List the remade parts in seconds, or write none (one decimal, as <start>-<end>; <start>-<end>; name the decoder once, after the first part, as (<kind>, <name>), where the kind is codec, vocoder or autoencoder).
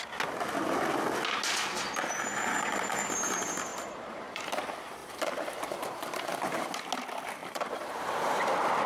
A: 3.7-4.4 (vocoder, BigVGAN v2); 5.0-6.6; 7.4-8.9